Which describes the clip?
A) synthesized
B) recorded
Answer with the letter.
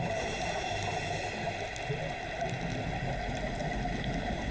B